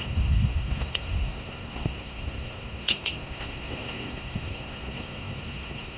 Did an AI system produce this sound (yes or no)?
yes